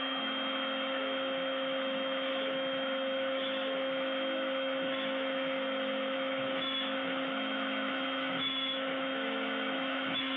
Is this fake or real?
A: fake